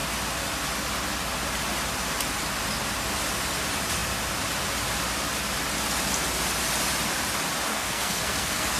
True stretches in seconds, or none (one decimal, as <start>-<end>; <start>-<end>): 0.0-7.7